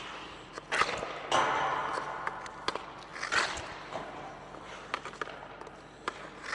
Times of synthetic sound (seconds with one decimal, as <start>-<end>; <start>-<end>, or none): none